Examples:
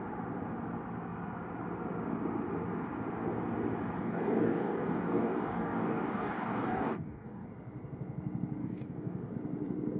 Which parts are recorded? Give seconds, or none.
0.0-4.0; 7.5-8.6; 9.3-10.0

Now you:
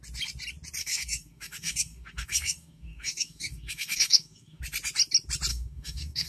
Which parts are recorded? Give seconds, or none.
0.0-0.8; 4.6-5.5

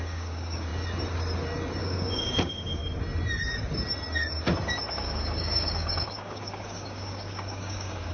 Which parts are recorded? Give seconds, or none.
0.7-1.8; 2.8-4.9

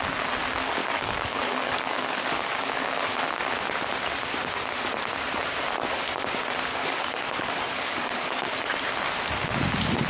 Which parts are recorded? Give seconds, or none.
0.0-0.8; 3.3-6.7; 8.6-10.1

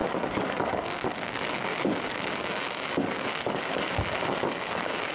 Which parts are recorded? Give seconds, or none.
none